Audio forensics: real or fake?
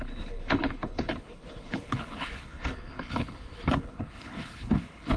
fake